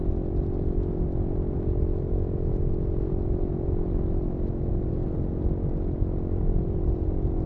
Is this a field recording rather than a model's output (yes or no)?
yes